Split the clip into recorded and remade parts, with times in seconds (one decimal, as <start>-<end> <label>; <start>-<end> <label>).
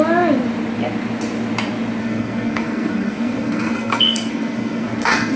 0.0-2.0 recorded; 2.0-5.4 remade